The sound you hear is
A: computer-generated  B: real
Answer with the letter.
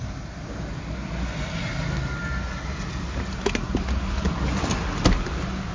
B